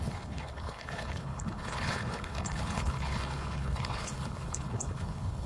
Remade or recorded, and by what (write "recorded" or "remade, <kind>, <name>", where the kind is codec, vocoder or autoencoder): remade, codec, HILCodec